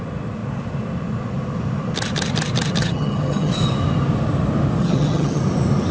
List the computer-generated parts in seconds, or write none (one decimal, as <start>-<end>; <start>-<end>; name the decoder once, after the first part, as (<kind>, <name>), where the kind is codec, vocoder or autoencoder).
2.8-3.5 (vocoder, HiFi-GAN); 4.8-5.4